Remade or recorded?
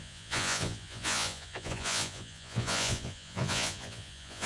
remade